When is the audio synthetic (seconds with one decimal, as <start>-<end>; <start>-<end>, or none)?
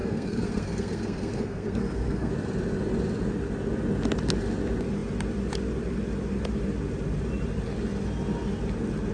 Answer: 0.0-2.3